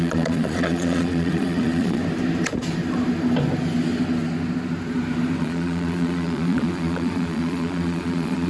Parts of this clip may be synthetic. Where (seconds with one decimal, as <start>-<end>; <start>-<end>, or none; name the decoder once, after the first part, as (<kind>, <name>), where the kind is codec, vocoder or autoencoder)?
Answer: 0.0-2.0 (vocoder, Vocos); 5.4-8.5